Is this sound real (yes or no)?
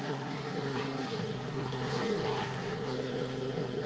no